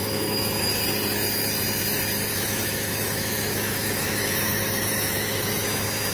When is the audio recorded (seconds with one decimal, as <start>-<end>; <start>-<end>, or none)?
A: 0.7-2.3